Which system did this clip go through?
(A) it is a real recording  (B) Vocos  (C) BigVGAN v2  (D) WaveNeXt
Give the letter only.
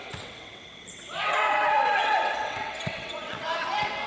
D